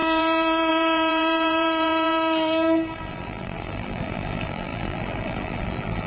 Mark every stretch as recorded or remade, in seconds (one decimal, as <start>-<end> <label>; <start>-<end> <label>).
0.0-6.1 remade